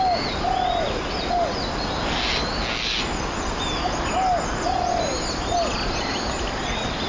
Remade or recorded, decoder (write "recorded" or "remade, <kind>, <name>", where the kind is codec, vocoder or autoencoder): recorded